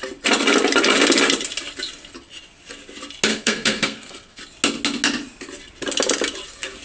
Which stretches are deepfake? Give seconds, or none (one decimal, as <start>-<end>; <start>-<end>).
3.3-4.4